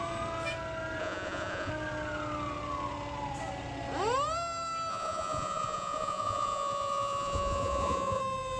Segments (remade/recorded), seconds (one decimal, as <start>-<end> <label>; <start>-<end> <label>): 0.0-1.0 recorded; 1.0-1.7 remade; 1.7-4.9 recorded; 4.9-8.2 remade; 8.2-8.6 recorded